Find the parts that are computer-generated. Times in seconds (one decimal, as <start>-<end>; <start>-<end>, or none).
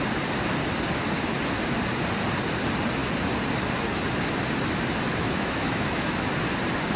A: 5.1-6.3